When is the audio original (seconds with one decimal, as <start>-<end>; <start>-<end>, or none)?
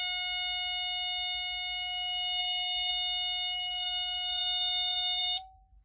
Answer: 0.0-2.4; 2.9-5.8